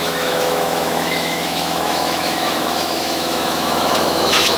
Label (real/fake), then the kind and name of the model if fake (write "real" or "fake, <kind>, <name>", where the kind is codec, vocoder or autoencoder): fake, autoencoder, DAC-VAE